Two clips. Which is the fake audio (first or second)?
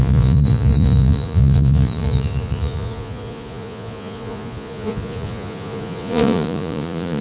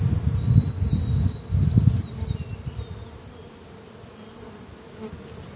first